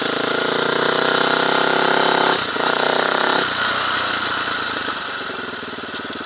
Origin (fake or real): real